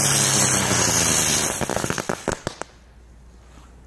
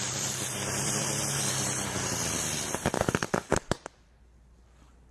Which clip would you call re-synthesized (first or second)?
second